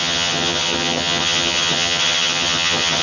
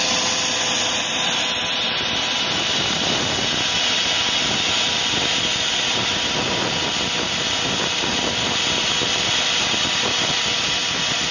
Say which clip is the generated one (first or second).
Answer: first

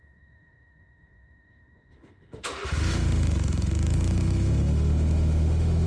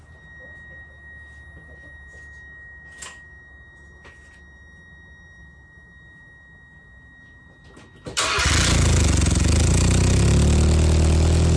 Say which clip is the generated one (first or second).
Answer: first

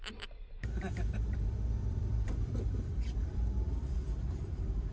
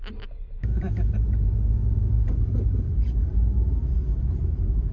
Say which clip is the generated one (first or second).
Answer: first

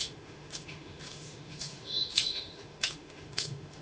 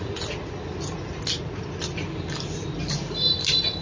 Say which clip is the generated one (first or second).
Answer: first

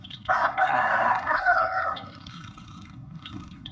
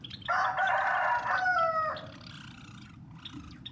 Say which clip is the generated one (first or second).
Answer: first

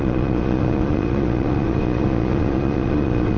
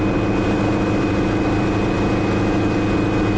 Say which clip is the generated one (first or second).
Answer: first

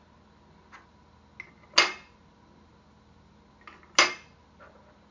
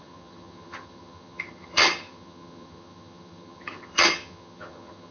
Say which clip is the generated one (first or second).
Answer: second